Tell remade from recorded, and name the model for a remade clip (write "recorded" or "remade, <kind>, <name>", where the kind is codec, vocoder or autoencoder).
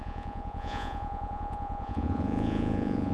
remade, vocoder, Vocos